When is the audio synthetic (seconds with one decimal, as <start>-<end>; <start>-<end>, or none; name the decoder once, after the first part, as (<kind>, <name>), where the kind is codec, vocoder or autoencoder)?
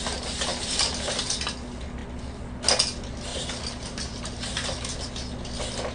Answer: 0.5-1.3 (vocoder, BigVGAN v2); 3.3-5.1